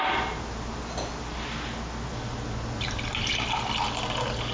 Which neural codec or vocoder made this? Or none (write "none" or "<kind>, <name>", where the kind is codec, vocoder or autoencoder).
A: none